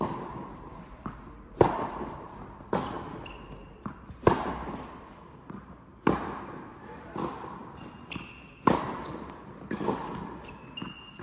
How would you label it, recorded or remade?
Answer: recorded